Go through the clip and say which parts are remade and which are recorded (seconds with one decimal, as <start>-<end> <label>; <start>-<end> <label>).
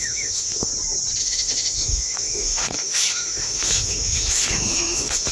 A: 0.0-0.7 remade; 0.7-1.2 recorded; 1.2-5.3 remade